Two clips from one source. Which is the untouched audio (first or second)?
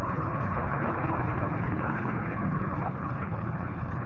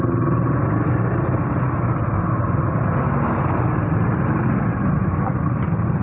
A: second